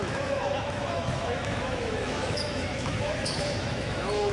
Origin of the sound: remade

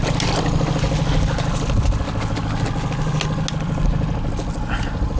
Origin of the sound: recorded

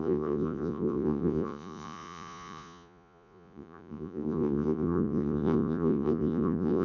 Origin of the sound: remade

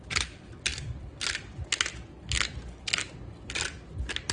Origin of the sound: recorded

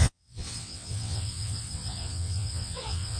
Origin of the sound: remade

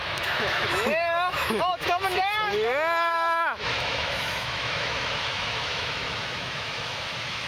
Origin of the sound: remade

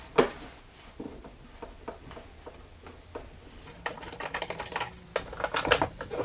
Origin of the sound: recorded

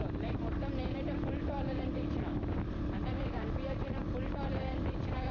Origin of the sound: recorded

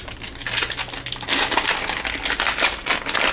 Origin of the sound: recorded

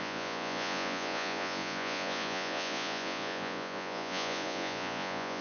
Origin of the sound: remade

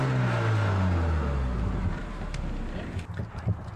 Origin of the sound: recorded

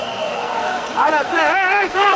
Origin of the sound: remade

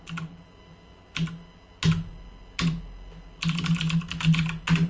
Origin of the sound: recorded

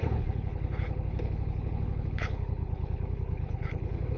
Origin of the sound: remade